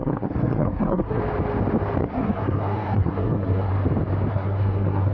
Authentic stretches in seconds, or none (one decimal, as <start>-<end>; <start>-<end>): 1.2-2.0; 3.7-4.3